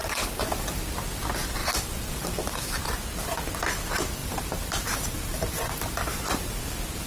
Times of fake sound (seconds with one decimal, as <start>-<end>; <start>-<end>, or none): 0.0-0.8; 1.6-2.6; 4.2-6.6